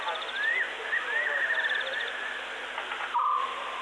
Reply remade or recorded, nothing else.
recorded